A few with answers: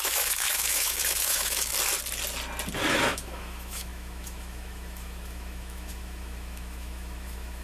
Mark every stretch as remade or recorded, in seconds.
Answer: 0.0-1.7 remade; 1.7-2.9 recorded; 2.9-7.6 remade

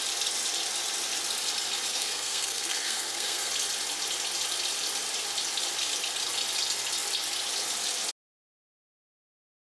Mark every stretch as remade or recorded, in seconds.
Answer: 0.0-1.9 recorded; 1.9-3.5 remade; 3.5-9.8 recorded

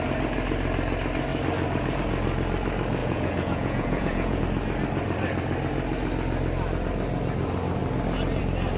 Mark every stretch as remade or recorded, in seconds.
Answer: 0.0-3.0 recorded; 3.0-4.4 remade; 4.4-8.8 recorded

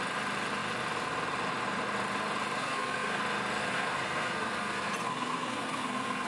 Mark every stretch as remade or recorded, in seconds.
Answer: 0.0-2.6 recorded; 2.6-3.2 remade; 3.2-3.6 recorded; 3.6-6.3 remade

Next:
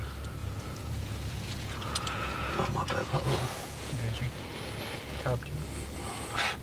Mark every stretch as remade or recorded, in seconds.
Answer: 0.0-0.4 recorded; 0.4-4.4 remade; 4.4-6.6 recorded

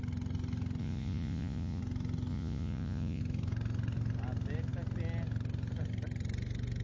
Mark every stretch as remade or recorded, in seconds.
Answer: 0.0-0.8 recorded; 0.8-1.8 remade; 1.8-2.3 recorded; 2.3-3.2 remade; 3.2-6.8 recorded